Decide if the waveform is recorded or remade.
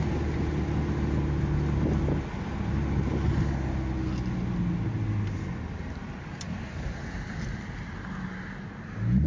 recorded